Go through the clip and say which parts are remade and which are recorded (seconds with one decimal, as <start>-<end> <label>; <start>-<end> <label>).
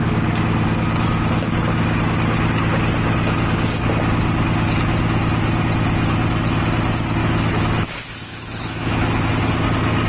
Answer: 0.0-7.2 recorded; 7.2-9.3 remade; 9.3-10.1 recorded